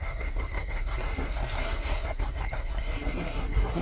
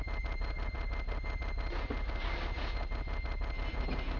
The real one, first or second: second